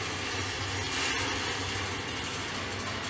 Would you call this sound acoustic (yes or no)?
yes